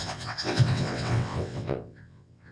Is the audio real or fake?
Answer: fake